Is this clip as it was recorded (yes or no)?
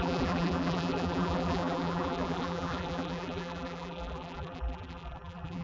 no